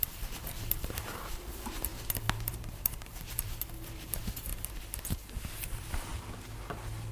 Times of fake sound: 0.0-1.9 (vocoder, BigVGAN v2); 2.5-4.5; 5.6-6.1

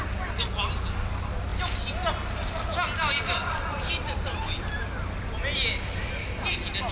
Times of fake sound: none